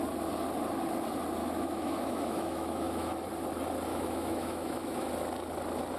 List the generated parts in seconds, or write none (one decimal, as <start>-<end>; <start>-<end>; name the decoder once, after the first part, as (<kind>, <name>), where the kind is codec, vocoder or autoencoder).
1.4-3.1 (autoencoder, DAC-VAE); 3.9-5.1